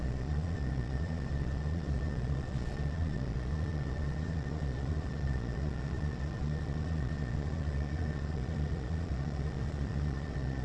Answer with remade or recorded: remade